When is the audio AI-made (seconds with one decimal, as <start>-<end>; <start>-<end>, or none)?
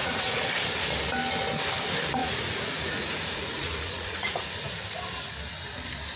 0.0-0.5; 2.2-4.5